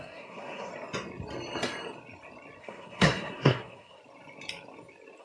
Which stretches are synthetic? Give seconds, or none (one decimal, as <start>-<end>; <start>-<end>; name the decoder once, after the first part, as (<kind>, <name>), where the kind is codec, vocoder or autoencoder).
0.0-0.7 (codec, SNAC); 2.6-4.0